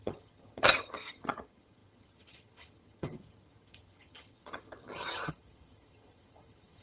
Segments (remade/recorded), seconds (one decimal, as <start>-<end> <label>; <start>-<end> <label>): 0.0-6.8 remade